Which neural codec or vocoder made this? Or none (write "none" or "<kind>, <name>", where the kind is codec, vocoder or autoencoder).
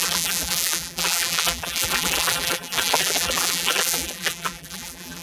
vocoder, BigVGAN v2